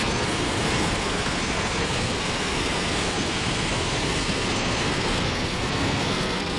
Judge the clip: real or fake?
fake